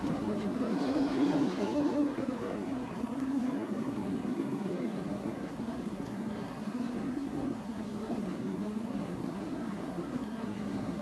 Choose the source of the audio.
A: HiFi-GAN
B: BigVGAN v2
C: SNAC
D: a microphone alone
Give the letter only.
C